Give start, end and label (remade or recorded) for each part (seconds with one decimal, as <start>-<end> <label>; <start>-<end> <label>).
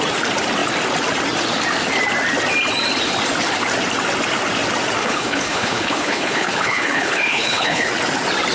0.0-5.0 recorded; 5.0-7.9 remade; 7.9-8.5 recorded